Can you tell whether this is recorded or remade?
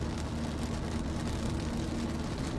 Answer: recorded